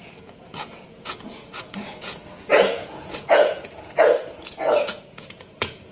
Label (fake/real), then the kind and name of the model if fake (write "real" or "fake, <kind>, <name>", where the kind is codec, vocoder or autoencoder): fake, vocoder, Vocos